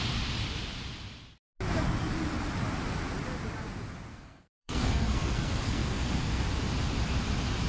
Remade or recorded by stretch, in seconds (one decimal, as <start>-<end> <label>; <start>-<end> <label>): 0.0-4.1 recorded; 4.1-6.4 remade; 6.4-7.7 recorded